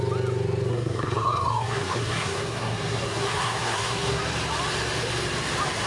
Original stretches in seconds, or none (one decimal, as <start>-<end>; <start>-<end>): 0.0-0.7; 4.2-5.9